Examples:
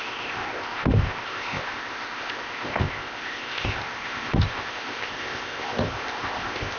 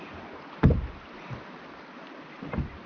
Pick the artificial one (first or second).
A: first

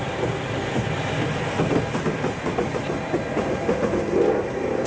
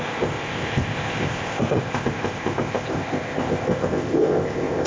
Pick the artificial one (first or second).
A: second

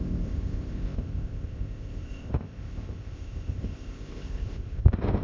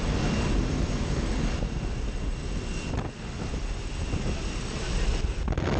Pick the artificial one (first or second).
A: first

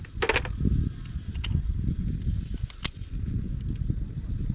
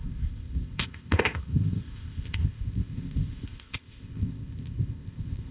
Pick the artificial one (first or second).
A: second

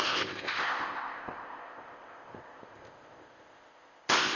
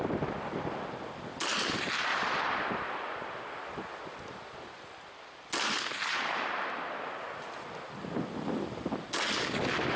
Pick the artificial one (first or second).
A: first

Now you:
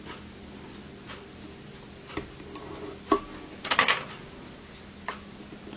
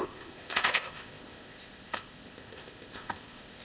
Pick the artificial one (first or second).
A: second